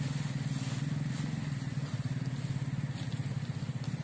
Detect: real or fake real